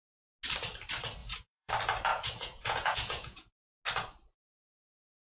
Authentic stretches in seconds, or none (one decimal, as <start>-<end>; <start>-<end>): 0.0-1.2; 1.7-2.1; 3.6-5.3